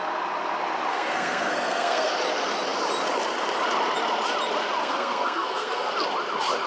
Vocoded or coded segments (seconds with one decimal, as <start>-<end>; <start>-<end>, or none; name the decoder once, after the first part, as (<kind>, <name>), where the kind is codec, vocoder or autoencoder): 0.9-2.1 (codec, SNAC); 4.8-5.9